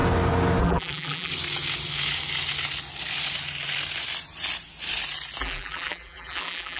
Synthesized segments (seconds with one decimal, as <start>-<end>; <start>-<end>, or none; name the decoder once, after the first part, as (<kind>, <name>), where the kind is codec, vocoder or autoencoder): 0.6-1.3 (vocoder, BigVGAN v2); 5.4-6.8